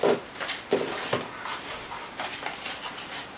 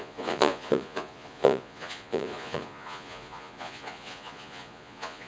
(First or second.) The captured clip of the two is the first